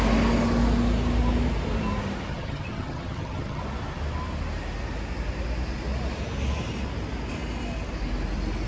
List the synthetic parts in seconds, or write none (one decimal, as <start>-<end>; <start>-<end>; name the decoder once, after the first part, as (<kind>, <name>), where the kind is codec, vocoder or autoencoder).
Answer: 2.3-3.6 (vocoder, HiFi-GAN)